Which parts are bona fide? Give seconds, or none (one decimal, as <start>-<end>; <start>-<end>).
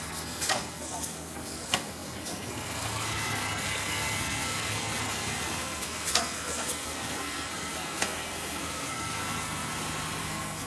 9.7-10.2